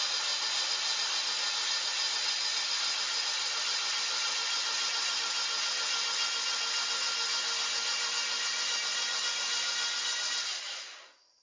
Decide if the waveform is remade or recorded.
recorded